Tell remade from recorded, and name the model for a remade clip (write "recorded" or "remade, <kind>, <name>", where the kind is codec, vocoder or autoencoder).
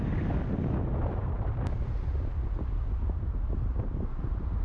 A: recorded